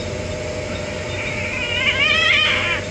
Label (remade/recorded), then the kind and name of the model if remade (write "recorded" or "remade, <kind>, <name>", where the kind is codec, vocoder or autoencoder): recorded